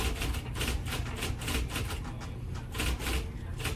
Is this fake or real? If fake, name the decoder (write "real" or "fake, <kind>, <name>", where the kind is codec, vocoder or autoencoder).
real